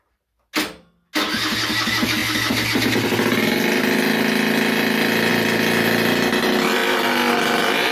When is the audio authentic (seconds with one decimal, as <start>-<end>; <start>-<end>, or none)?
0.0-7.9